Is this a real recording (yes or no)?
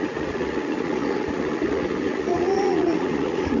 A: no